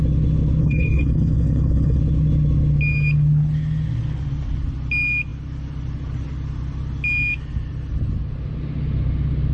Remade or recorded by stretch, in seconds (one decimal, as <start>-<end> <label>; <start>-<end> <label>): 0.0-0.6 recorded; 0.6-2.0 remade; 2.0-9.5 recorded